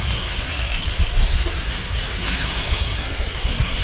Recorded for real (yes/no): no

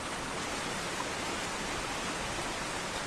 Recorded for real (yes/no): yes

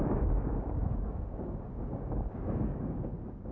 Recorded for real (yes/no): no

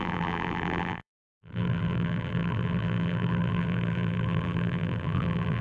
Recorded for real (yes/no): no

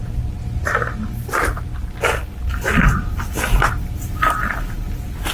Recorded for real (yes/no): yes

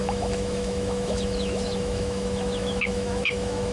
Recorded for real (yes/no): no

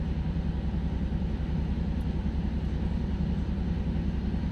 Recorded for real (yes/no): yes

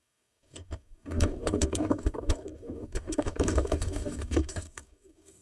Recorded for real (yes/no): no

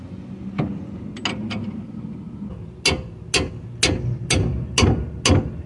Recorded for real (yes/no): yes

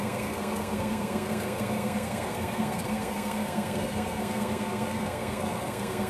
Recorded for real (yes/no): no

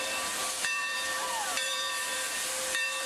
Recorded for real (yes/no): no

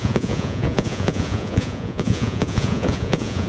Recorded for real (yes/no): no